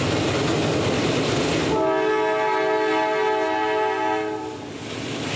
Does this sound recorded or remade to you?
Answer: recorded